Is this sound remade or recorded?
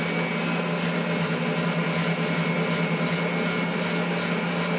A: recorded